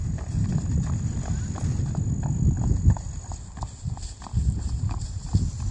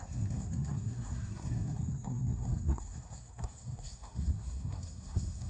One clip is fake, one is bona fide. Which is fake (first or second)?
second